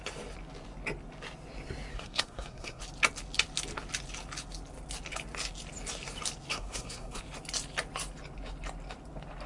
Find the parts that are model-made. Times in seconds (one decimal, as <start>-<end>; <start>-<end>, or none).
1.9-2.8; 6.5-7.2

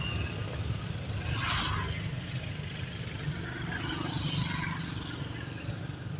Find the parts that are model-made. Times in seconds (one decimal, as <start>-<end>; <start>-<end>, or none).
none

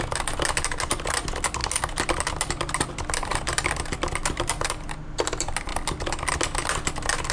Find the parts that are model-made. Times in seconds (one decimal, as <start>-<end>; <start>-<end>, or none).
none